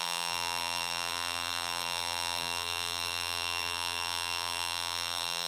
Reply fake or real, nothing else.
fake